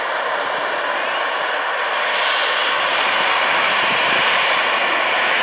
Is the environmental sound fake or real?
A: real